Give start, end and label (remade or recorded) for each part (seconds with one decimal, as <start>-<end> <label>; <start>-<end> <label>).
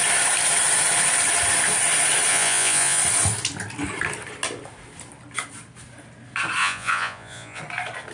0.0-2.3 recorded; 2.3-3.0 remade; 3.0-6.6 recorded; 6.6-7.6 remade; 7.6-8.1 recorded